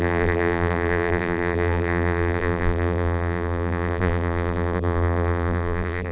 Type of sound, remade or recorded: remade